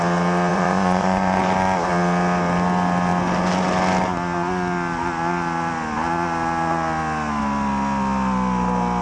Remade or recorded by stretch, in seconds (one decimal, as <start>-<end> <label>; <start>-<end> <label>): 0.0-0.5 recorded; 0.5-1.4 remade; 1.4-9.0 recorded